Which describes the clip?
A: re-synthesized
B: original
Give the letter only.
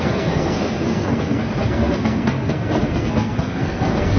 A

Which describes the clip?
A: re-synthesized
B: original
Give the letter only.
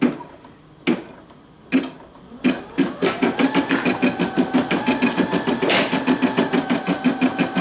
B